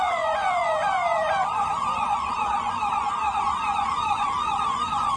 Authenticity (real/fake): fake